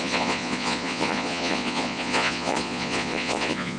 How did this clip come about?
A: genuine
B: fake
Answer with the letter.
B